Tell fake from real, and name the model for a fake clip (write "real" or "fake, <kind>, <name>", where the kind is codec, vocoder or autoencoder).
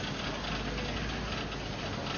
real